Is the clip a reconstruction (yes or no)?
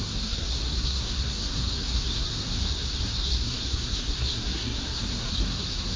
yes